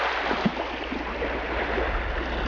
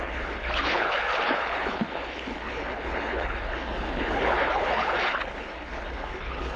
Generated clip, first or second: second